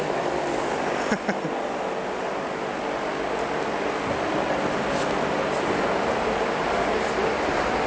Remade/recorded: recorded